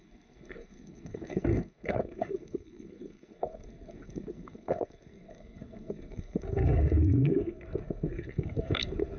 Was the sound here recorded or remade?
remade